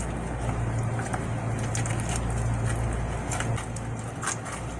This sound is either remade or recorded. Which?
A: recorded